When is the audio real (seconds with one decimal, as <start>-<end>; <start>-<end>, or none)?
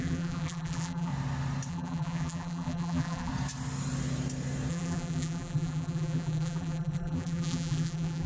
1.1-1.7; 3.3-4.7